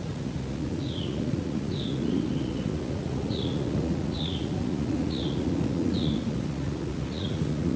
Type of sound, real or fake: fake